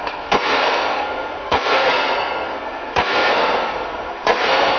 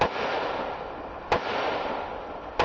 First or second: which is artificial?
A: first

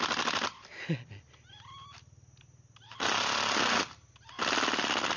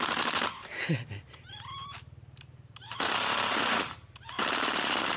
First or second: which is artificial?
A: second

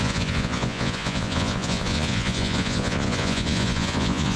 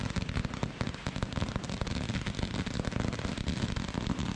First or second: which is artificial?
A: first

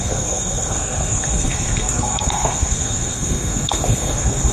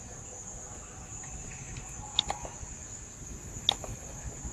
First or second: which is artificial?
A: first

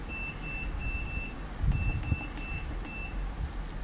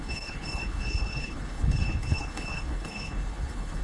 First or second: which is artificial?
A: second